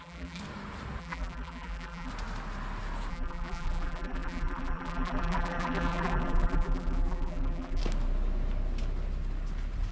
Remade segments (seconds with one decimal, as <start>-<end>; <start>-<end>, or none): 0.0-0.4; 1.0-2.1; 3.1-7.8